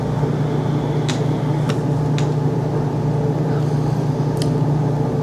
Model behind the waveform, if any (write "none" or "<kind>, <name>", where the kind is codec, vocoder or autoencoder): none